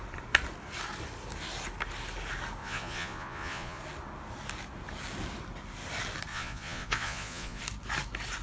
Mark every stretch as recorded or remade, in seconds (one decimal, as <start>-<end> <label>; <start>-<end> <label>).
0.0-2.6 recorded; 2.6-3.8 remade; 3.8-6.3 recorded; 6.3-7.6 remade; 7.6-8.4 recorded